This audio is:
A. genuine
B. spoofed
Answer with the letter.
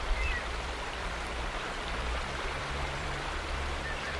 B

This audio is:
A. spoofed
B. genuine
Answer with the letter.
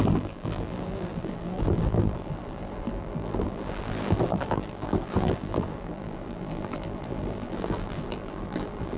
A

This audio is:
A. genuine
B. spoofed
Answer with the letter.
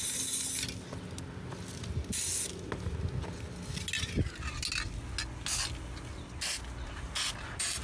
A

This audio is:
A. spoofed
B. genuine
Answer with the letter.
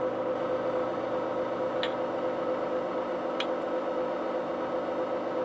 B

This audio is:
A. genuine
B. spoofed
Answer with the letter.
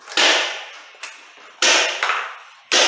A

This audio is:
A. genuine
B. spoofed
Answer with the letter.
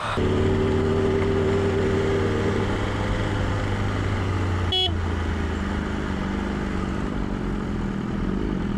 A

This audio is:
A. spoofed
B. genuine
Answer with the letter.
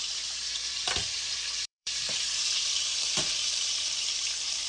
A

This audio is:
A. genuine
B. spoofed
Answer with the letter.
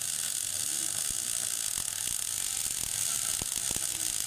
A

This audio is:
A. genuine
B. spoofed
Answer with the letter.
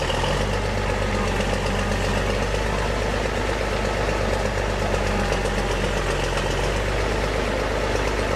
A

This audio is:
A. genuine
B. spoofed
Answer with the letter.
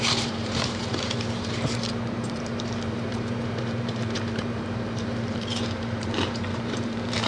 B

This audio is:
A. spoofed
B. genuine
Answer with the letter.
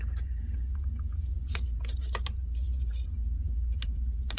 A